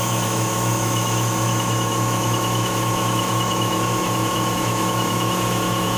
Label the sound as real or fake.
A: fake